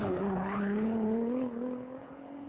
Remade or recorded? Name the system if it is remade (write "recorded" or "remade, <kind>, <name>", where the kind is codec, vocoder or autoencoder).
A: remade, codec, HILCodec